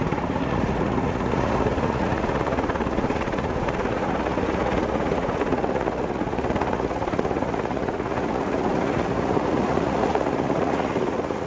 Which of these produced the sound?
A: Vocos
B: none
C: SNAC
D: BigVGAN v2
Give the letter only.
A